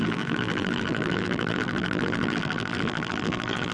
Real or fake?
fake